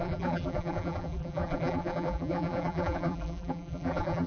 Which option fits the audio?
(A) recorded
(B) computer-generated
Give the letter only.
B